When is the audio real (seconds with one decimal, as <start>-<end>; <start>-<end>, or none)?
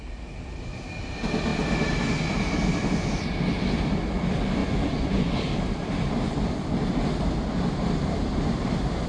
0.0-4.6; 5.3-9.1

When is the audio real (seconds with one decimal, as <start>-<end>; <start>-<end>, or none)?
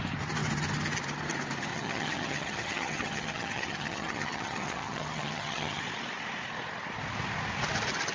0.0-1.7; 5.8-8.1